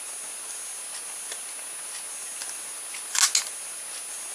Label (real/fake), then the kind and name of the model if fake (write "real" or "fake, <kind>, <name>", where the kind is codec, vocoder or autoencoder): real